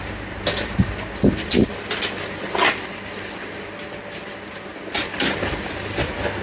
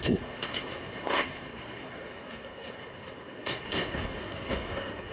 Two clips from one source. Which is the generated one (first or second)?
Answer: second